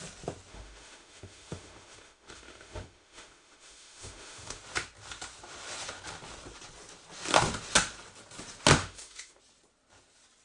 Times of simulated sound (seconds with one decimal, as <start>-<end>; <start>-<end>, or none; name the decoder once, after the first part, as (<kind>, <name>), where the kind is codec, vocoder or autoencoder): 0.5-4.6 (autoencoder, DAC-VAE); 8.8-9.4